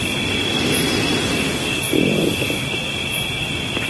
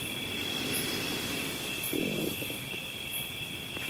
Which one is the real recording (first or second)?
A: first